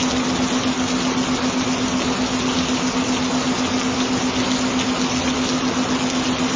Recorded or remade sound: recorded